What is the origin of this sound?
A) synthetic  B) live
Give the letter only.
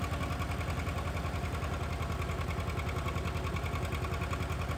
B